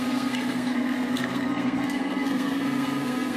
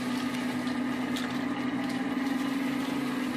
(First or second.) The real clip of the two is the second